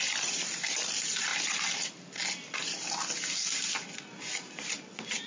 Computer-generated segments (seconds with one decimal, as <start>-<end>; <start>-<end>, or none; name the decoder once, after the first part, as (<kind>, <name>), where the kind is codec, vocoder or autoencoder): 0.0-1.3 (vocoder, BigVGAN v2); 4.5-5.3